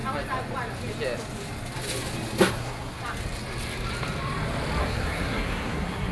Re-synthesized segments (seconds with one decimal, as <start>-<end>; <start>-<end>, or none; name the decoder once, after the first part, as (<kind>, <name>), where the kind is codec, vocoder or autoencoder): 2.5-3.0 (codec, SNAC); 4.8-6.1